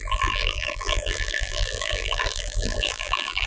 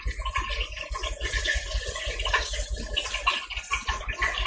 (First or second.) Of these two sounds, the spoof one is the first